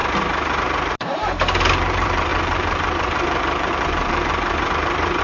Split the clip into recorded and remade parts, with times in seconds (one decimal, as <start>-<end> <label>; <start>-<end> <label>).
0.0-0.9 recorded; 0.9-5.2 remade